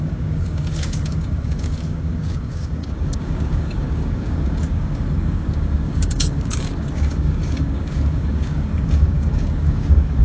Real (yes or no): no